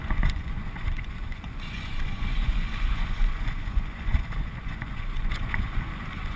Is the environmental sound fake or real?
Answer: fake